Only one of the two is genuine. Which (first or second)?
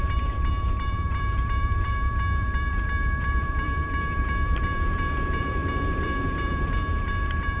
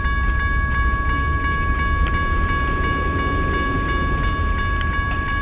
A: second